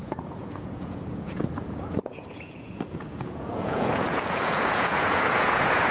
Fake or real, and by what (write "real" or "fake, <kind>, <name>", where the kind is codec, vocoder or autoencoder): fake, vocoder, Vocos